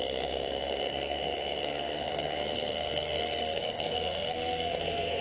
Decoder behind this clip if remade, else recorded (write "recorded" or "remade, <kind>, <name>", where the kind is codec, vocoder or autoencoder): remade, codec, SNAC